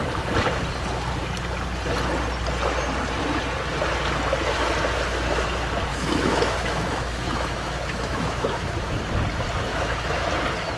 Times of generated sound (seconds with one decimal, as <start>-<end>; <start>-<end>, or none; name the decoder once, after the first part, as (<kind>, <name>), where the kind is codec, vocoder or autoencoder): 5.9-9.0 (autoencoder, DAC-VAE); 9.7-10.3